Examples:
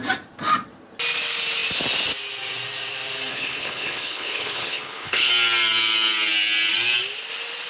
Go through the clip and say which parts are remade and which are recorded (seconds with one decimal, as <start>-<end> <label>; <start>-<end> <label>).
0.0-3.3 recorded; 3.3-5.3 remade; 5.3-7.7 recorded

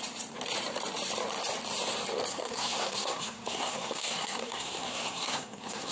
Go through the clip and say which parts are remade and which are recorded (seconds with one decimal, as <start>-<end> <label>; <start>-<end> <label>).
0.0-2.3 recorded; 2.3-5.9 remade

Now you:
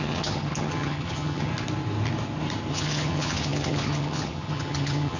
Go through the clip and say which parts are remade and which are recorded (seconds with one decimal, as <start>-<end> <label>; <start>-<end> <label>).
0.0-1.5 remade; 1.5-2.7 recorded; 2.7-5.2 remade

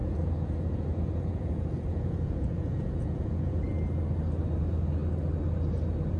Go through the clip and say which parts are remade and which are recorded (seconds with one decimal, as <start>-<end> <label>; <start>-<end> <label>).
0.0-3.7 remade; 3.7-6.2 recorded

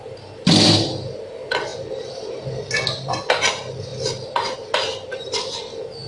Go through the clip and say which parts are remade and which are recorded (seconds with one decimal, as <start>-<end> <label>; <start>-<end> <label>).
0.0-6.1 recorded

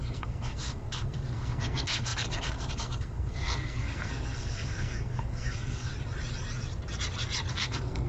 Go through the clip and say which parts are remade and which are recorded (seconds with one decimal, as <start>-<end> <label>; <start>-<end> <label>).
0.0-5.9 remade; 5.9-7.5 recorded; 7.5-8.1 remade